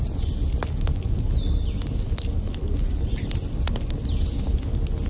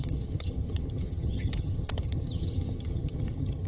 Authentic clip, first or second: first